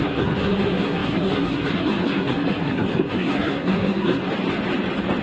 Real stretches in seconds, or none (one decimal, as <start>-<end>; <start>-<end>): 4.2-5.2